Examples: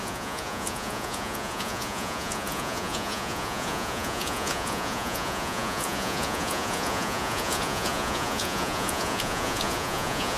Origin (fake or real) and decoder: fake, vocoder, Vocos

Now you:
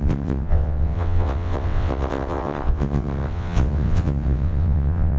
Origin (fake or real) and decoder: fake, vocoder, WaveNeXt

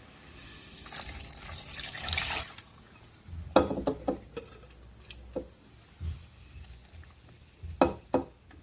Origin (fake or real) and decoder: real